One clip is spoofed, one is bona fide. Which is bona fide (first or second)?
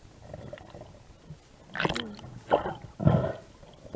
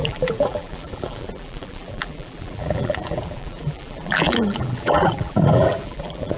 first